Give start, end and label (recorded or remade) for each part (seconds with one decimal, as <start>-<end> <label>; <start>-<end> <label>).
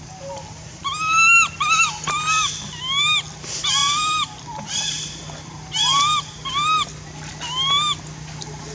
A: 0.0-8.7 recorded